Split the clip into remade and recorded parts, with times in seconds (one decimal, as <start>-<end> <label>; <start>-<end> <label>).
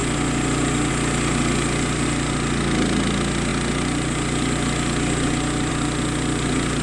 0.0-6.8 recorded